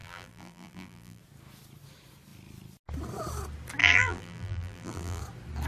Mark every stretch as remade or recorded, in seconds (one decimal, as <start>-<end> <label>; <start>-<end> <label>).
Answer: 0.0-1.2 remade; 1.2-3.8 recorded; 3.8-5.2 remade; 5.2-5.7 recorded